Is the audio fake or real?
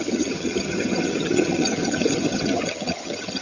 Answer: fake